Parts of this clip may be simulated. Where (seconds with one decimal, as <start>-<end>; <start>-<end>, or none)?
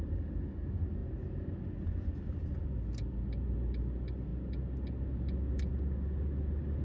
none